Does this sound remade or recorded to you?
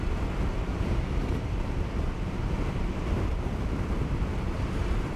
remade